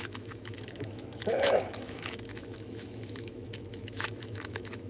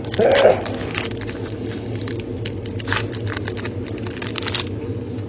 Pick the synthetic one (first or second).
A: first